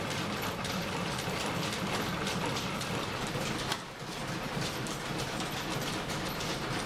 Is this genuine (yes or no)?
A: yes